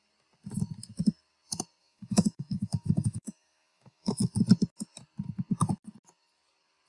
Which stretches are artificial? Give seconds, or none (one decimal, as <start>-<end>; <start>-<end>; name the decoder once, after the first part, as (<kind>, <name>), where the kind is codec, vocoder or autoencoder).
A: 1.8-4.3 (autoencoder, DAC-VAE)